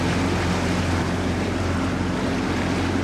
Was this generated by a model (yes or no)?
no